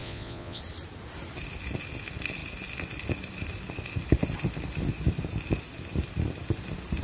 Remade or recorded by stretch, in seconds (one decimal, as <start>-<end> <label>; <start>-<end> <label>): 0.0-0.6 remade; 0.6-7.0 recorded

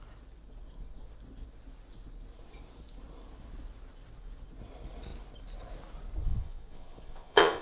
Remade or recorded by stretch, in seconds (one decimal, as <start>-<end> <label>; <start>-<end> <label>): 0.0-6.3 recorded; 6.3-7.6 remade

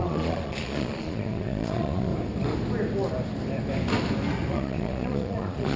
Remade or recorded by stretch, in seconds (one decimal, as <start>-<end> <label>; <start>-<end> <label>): 0.0-2.1 remade; 2.1-4.5 recorded; 4.5-5.8 remade